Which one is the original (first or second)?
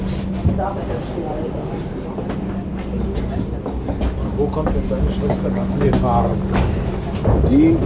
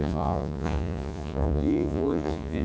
first